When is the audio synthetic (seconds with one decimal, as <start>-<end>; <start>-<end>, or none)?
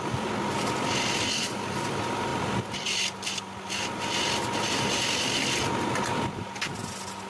none